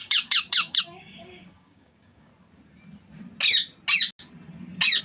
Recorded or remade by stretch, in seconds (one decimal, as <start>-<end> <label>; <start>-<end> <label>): 0.0-2.3 remade; 2.3-5.0 recorded